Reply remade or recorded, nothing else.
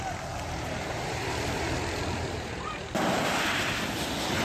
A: recorded